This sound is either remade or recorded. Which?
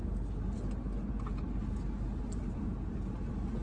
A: recorded